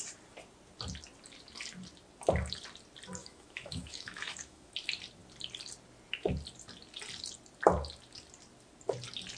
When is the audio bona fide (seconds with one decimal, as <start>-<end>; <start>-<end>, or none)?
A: 0.0-3.2; 4.7-9.4